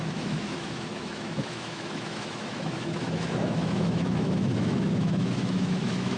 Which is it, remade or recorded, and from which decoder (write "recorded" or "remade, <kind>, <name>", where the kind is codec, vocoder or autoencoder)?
remade, autoencoder, DAC-VAE